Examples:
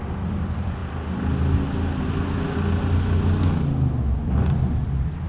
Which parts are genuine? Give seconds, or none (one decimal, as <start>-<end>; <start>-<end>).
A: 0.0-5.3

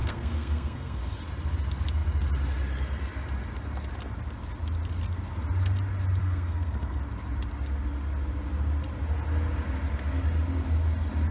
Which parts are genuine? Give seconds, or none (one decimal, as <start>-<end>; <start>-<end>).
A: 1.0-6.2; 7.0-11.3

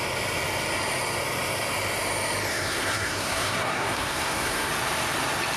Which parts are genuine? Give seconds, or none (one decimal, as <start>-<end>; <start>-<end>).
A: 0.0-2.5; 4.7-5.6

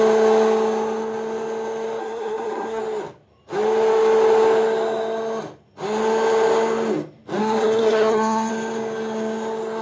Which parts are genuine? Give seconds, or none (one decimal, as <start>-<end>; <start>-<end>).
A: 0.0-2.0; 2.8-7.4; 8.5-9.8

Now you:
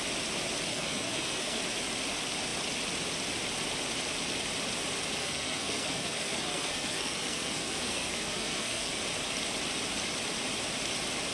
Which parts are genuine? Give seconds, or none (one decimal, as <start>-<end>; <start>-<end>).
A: 0.0-0.7; 1.6-5.2; 8.9-11.3

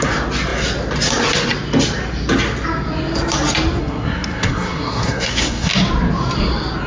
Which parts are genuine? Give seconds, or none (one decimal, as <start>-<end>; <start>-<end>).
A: 0.0-3.8; 5.7-6.9

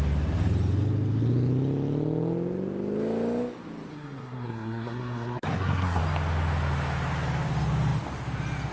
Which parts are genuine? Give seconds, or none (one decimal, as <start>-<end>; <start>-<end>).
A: 0.0-3.9; 6.0-8.7

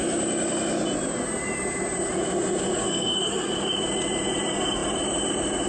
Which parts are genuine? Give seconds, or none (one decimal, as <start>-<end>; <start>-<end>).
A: 0.0-2.8; 3.5-5.7